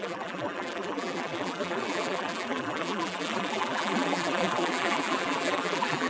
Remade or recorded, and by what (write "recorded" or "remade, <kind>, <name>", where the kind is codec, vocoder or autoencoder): remade, vocoder, BigVGAN v2